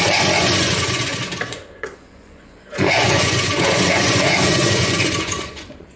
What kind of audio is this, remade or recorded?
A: remade